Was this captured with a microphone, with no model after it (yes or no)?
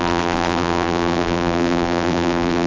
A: no